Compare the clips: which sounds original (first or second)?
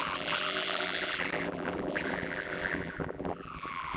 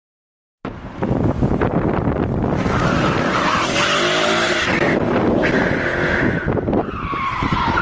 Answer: second